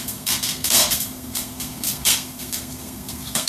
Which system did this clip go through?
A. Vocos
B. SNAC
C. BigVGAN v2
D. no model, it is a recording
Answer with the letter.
B